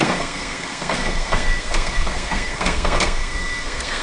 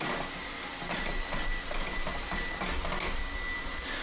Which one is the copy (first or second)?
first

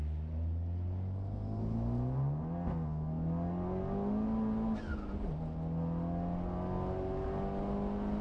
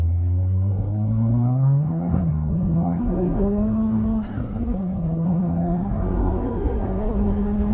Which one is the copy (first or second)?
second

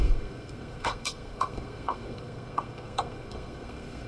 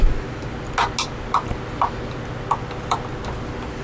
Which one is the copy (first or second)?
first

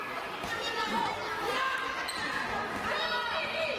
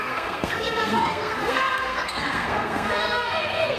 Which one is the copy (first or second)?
second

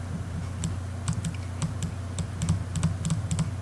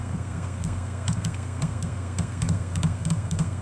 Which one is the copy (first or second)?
second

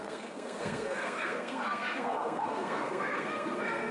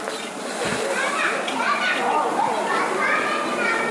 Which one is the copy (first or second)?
first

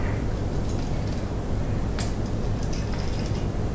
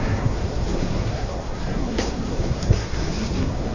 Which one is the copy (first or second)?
second